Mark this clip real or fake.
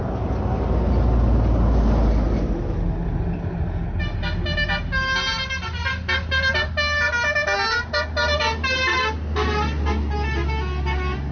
real